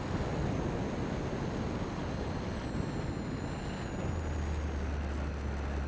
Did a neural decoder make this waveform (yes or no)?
no